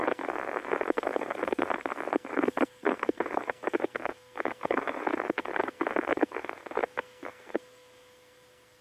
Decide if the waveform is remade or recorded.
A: remade